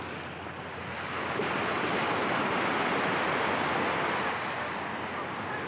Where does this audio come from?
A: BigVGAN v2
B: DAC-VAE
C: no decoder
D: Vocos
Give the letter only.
C